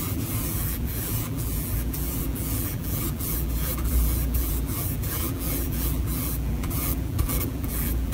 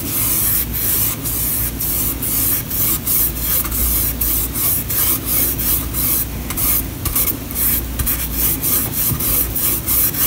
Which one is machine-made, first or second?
first